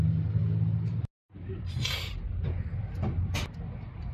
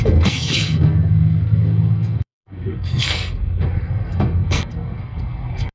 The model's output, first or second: second